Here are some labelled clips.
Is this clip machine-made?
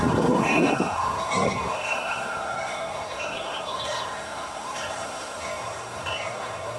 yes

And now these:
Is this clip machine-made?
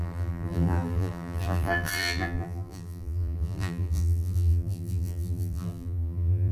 yes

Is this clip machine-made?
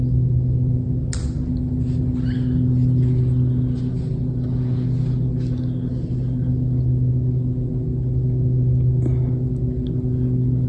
no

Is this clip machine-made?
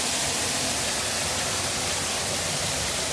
no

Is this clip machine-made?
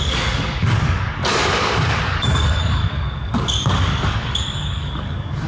yes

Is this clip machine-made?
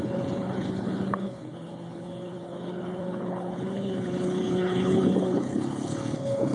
yes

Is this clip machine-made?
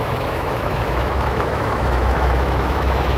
yes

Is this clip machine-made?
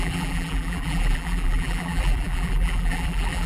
yes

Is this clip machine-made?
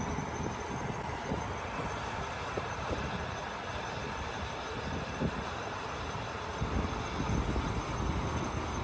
no